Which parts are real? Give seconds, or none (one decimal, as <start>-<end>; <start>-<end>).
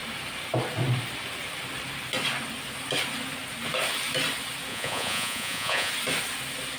0.0-4.7; 5.9-6.8